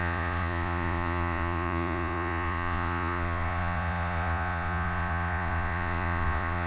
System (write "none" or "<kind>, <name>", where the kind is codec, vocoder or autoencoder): vocoder, Vocos